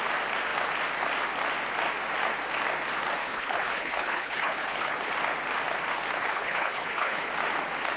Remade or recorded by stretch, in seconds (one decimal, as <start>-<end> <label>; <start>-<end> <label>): 0.0-3.2 recorded; 3.2-5.1 remade; 5.1-6.2 recorded; 6.2-7.3 remade; 7.3-8.0 recorded